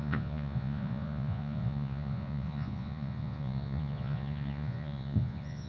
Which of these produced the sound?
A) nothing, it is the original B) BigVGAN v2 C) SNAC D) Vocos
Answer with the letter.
D